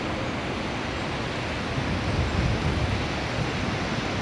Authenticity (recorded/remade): recorded